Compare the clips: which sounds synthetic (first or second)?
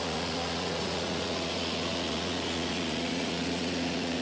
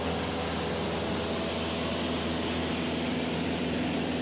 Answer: first